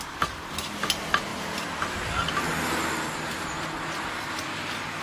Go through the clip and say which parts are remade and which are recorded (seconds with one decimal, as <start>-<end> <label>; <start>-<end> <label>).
0.0-5.0 recorded